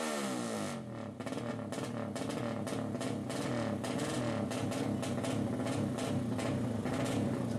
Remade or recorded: recorded